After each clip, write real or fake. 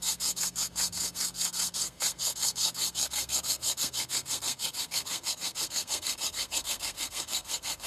fake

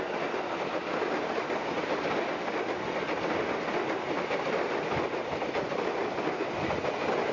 real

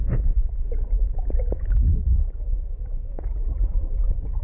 fake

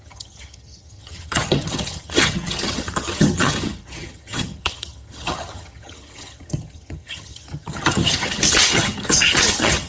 fake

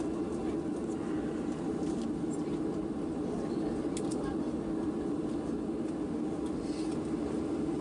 real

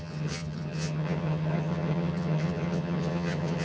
fake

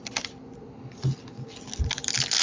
real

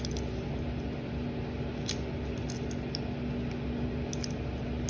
real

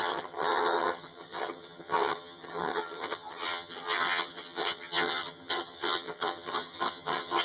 fake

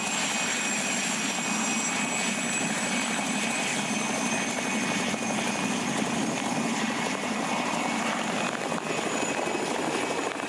real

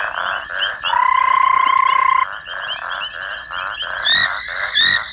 real